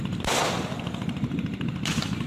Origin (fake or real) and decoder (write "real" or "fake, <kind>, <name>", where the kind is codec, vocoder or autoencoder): real